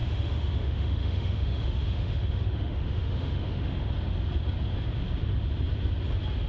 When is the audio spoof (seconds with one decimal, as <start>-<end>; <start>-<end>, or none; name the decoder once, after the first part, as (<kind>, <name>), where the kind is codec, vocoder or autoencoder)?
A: 0.0-3.9 (autoencoder, DAC-VAE)